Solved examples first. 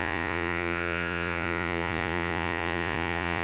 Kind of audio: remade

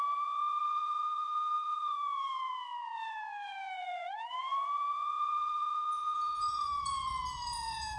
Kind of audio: remade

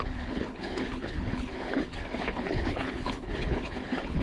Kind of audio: remade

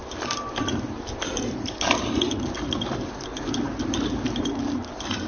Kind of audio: recorded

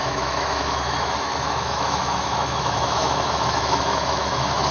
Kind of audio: remade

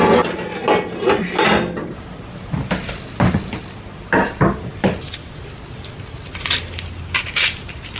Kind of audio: recorded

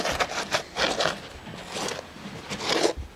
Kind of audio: recorded